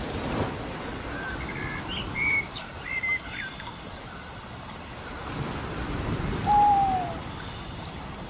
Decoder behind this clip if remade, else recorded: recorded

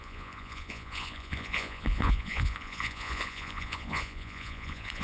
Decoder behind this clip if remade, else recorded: remade, vocoder, Vocos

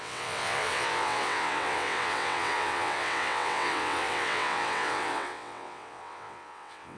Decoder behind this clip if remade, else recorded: remade, vocoder, WaveNeXt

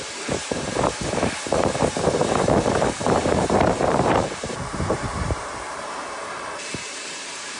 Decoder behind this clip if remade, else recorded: remade, vocoder, BigVGAN v2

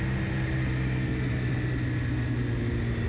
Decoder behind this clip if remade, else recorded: recorded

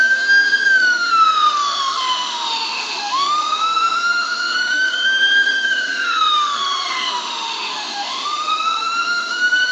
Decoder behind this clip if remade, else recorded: remade, autoencoder, DAC-VAE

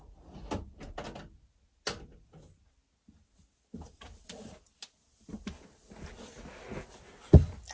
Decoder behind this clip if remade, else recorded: recorded